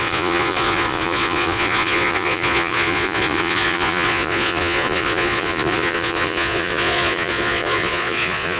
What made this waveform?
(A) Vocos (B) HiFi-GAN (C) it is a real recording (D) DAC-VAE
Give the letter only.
A